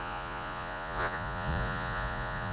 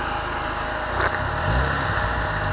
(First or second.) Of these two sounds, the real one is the second